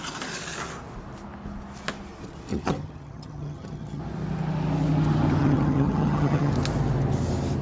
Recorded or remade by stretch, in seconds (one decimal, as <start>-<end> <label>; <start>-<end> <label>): 0.0-2.5 recorded; 2.5-4.0 remade; 4.0-5.4 recorded; 5.4-6.5 remade; 6.5-7.6 recorded